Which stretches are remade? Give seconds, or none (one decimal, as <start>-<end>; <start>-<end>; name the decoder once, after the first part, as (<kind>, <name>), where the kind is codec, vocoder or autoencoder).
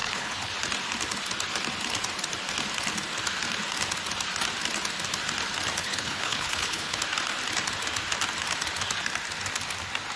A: 0.0-0.5 (codec, HILCodec); 5.8-7.0